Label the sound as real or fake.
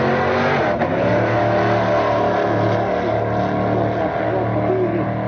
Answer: real